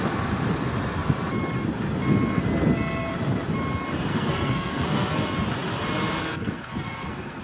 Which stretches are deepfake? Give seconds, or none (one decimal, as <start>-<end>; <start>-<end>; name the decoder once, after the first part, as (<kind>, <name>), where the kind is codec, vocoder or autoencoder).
4.1-5.2 (codec, SNAC); 6.2-7.4